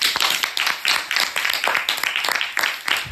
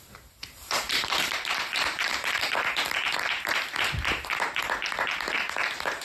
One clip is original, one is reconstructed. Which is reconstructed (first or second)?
second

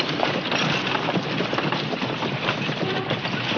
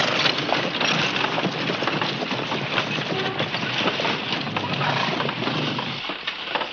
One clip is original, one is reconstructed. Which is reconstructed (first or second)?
first